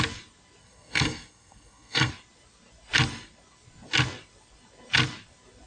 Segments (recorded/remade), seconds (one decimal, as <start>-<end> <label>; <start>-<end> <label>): 0.0-0.6 recorded; 0.6-2.1 remade; 2.1-5.7 recorded